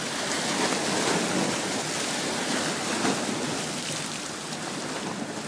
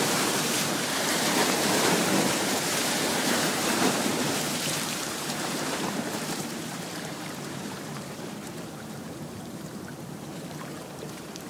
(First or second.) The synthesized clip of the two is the second